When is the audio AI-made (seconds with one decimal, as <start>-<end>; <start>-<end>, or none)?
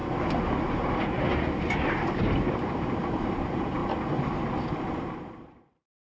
0.7-3.8; 4.8-6.0